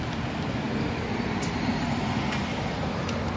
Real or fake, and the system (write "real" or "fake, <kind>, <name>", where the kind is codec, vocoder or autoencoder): real